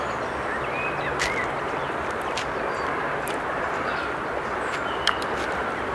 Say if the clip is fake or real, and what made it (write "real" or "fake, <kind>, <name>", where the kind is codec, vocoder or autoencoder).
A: fake, vocoder, BigVGAN v2